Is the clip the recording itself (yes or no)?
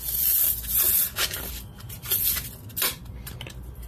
yes